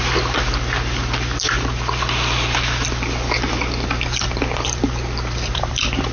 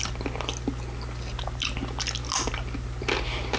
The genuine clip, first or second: second